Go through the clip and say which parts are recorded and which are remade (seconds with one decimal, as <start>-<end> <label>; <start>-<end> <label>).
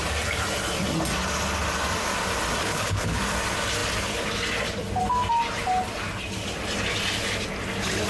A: 0.0-2.6 recorded; 2.6-3.2 remade; 3.2-8.1 recorded